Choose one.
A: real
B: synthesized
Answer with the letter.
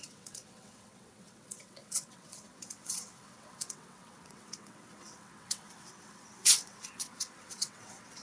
B